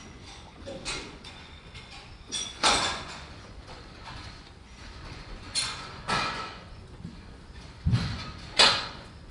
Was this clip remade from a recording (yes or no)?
yes